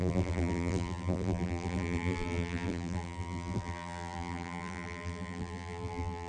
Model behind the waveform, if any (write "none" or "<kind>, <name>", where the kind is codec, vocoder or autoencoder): vocoder, BigVGAN v2